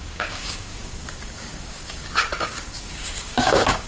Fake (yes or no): yes